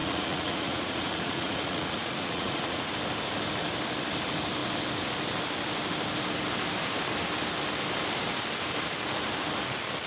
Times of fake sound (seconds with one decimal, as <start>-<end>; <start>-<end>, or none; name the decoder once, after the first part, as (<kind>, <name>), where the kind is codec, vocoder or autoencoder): 0.0-2.9 (vocoder, Vocos)